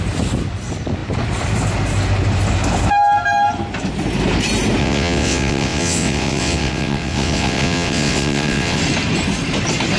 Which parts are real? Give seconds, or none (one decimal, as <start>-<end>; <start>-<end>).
0.0-4.8; 8.8-10.0